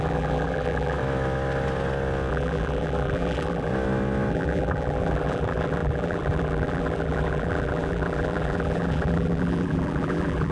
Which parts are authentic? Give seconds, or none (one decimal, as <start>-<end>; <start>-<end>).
1.0-2.3; 3.7-4.3